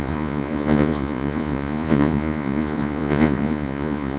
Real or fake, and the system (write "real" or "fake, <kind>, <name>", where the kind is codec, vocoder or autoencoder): fake, vocoder, Vocos